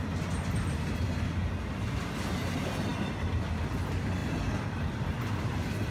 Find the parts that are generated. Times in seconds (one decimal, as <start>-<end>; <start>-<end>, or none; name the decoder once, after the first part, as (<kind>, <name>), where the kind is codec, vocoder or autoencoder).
4.2-5.9 (vocoder, BigVGAN v2)